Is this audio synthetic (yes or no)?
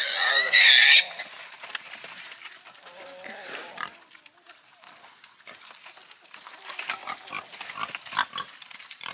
no